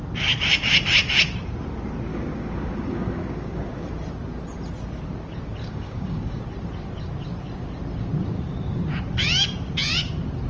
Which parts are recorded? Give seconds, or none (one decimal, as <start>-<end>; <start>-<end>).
0.0-2.1; 3.9-5.6; 6.4-10.5